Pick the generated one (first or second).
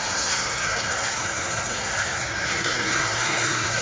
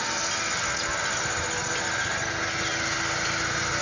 first